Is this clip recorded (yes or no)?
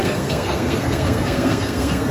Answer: no